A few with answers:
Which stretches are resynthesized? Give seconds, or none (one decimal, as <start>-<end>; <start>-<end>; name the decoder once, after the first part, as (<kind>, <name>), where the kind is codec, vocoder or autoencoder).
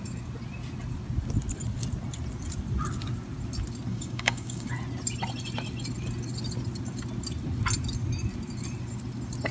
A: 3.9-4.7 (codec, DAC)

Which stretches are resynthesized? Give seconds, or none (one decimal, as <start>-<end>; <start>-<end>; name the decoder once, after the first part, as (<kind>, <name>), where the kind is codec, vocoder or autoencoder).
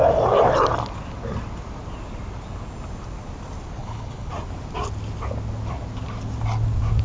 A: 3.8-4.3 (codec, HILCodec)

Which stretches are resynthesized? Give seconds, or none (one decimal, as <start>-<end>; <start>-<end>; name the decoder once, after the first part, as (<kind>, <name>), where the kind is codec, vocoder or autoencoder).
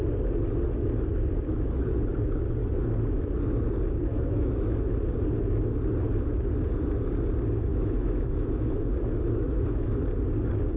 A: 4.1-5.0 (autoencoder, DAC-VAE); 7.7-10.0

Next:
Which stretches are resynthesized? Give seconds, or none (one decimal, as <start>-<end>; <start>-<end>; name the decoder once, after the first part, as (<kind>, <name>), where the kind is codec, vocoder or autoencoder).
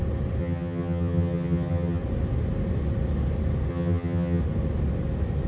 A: 0.4-2.0 (vocoder, HiFi-GAN); 3.7-4.4